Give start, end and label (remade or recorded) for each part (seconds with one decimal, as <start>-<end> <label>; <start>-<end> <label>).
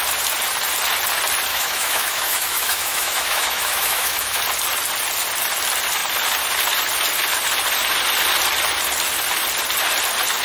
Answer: 0.0-1.5 recorded; 1.5-4.4 remade; 4.4-10.4 recorded